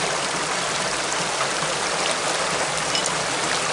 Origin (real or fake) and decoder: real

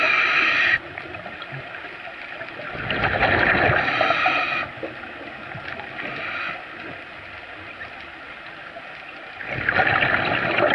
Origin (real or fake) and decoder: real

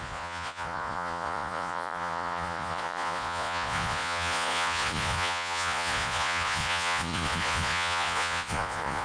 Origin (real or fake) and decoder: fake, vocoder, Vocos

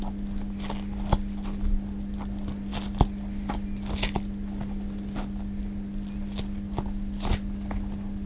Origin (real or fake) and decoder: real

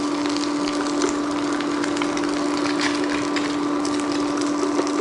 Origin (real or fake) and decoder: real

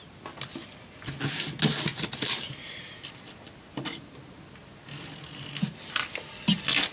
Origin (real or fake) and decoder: real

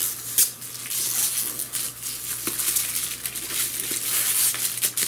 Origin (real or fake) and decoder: real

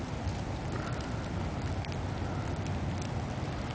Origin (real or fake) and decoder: real